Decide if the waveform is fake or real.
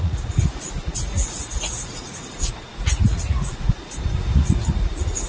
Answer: fake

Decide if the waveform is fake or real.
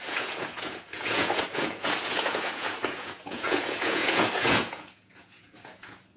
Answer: fake